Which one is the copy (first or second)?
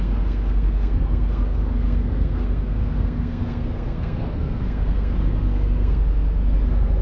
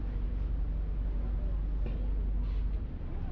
first